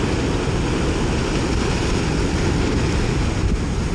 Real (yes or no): yes